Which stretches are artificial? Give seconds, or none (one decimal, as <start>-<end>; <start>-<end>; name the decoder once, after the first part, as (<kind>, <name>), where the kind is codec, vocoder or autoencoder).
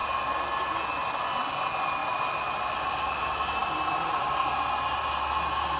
none